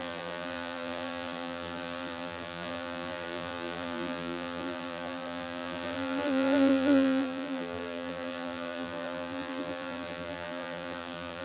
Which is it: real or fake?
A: fake